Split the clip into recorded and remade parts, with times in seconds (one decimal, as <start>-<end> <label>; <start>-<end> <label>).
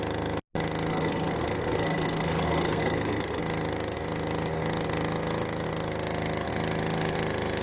0.0-0.9 recorded; 0.9-3.4 remade; 3.4-7.6 recorded